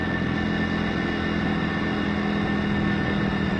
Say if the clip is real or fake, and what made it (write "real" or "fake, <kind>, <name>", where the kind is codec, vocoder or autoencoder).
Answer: real